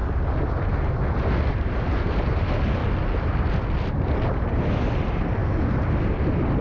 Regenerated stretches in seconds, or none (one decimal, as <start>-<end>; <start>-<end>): 1.5-2.8; 3.9-5.4